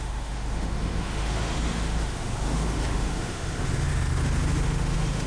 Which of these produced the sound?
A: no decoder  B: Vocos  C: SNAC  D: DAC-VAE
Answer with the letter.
D